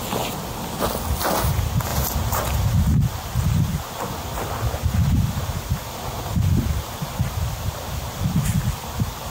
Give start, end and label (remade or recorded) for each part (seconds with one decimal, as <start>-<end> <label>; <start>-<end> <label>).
0.0-9.3 recorded